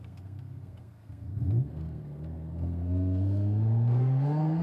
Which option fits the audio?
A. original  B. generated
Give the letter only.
B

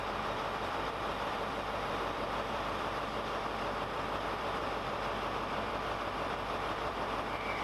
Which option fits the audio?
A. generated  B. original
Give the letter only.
A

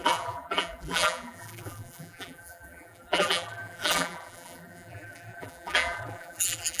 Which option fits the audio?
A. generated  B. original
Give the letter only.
A